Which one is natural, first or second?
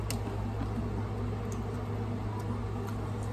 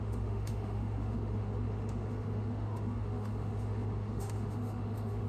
first